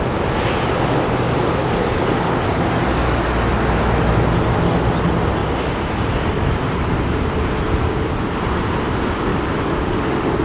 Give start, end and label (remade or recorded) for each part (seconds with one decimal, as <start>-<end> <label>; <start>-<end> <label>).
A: 0.0-1.6 recorded; 1.6-2.5 remade; 2.5-2.9 recorded; 2.9-3.4 remade; 3.4-9.3 recorded; 9.3-10.4 remade